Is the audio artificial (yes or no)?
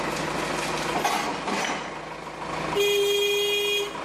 no